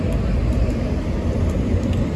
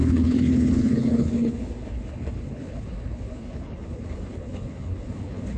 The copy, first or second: second